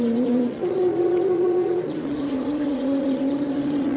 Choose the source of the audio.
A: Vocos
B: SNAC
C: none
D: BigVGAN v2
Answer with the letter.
A